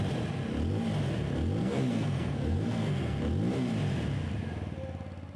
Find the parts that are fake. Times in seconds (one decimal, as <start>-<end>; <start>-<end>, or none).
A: 1.6-3.2